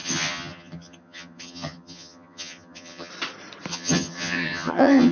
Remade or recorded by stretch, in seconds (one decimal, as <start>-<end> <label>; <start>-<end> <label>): 0.0-3.1 remade; 3.1-3.7 recorded; 3.7-5.1 remade